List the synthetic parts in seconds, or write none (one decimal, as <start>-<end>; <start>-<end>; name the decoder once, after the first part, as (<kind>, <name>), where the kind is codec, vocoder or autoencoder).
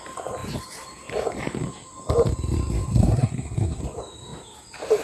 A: 3.0-3.8 (codec, SNAC)